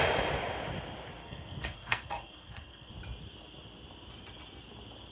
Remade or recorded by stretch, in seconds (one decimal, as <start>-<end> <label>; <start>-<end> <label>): 0.0-1.2 recorded; 1.2-2.9 remade; 2.9-5.1 recorded